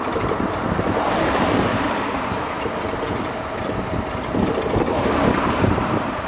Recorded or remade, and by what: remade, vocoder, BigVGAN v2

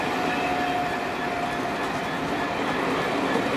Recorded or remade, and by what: recorded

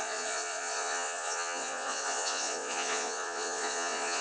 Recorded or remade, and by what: remade, vocoder, Vocos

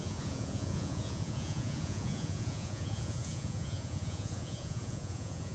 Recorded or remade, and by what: remade, vocoder, Vocos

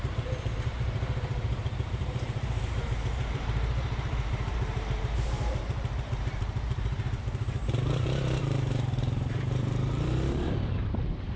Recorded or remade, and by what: remade, vocoder, BigVGAN v2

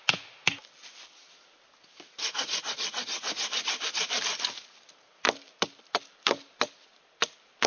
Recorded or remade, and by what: recorded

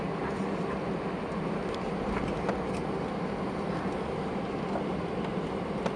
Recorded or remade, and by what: recorded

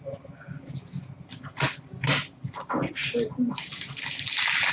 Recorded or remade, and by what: recorded